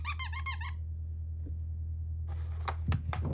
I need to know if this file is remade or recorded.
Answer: recorded